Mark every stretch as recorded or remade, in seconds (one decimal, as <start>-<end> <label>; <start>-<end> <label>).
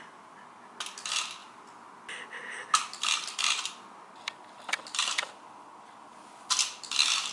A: 0.0-7.3 recorded